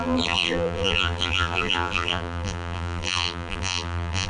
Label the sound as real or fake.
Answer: fake